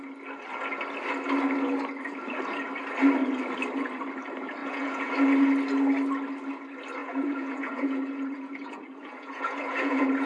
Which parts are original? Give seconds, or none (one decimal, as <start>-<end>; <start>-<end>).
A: 0.0-4.6; 5.1-7.0